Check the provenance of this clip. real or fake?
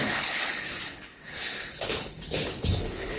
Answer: fake